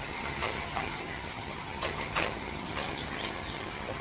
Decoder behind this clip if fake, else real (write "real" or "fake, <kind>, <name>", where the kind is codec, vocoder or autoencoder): fake, vocoder, HiFi-GAN